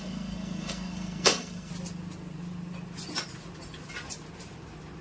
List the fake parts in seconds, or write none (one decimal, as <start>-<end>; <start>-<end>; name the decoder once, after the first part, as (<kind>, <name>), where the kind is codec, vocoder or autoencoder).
0.0-1.7 (codec, SNAC)